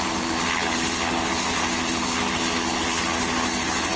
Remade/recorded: recorded